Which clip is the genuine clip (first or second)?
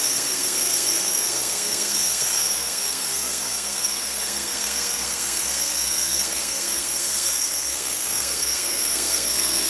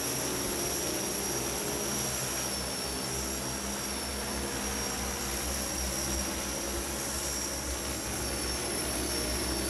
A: second